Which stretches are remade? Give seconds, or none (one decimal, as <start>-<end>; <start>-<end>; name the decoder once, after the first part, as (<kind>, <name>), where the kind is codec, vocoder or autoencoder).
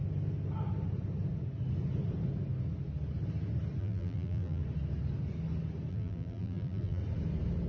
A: 3.8-4.6 (vocoder, BigVGAN v2); 5.9-7.0